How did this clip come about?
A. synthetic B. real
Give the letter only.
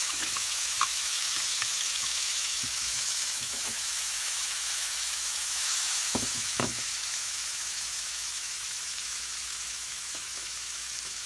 A